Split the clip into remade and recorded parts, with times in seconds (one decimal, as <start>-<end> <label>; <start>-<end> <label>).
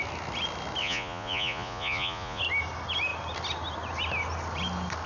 0.0-0.8 recorded; 0.8-2.4 remade; 2.4-5.1 recorded